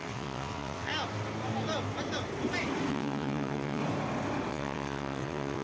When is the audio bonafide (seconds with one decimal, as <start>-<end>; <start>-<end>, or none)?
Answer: 0.9-2.9; 3.8-4.5